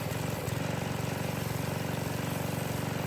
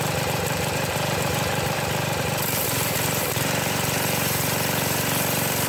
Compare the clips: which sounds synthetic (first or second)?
second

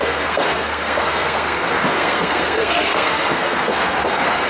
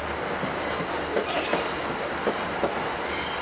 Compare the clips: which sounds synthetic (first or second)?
first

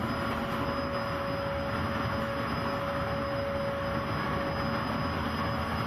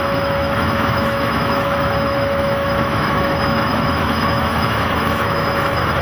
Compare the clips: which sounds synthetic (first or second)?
second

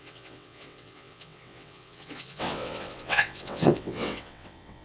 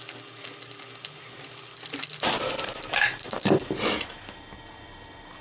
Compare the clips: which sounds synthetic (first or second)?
first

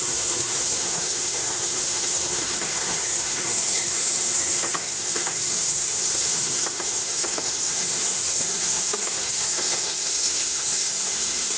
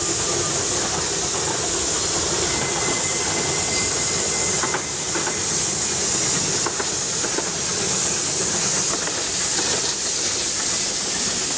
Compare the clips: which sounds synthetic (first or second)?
first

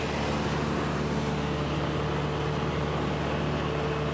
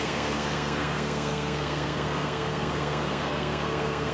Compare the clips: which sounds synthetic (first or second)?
second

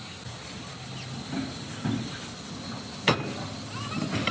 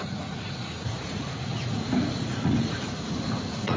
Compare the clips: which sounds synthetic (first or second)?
second